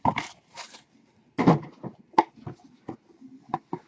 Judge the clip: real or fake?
real